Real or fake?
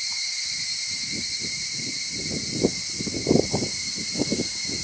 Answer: fake